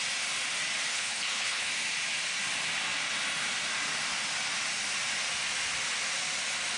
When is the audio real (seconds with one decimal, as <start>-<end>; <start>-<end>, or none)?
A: 0.0-0.9; 1.7-6.8